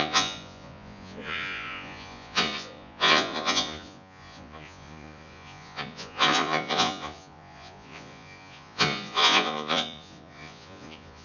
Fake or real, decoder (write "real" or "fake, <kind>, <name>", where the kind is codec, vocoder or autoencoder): fake, vocoder, Vocos